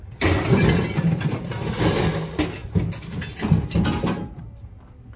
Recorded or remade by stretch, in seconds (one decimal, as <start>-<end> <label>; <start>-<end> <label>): 0.0-5.2 recorded